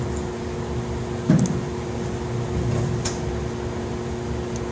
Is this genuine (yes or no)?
yes